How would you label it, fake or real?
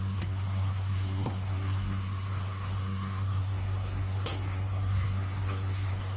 fake